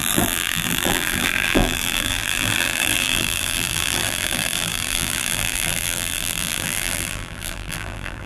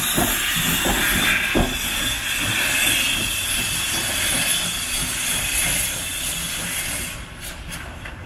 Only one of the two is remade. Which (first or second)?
first